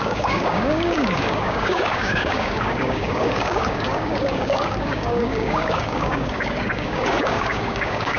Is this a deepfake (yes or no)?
yes